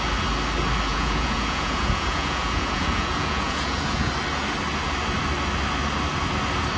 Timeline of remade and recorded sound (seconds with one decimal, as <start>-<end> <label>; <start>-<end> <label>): 0.0-0.9 recorded; 0.9-4.1 remade; 4.1-6.8 recorded